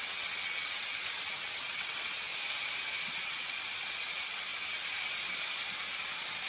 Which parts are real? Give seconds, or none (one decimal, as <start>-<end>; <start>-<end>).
2.3-3.1; 4.5-6.5